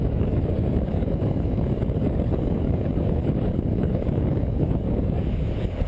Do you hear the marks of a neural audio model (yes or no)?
yes